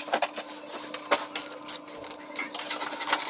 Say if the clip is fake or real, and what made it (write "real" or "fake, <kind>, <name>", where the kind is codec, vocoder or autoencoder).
real